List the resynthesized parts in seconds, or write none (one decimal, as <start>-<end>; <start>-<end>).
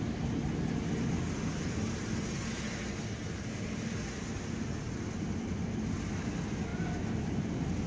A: none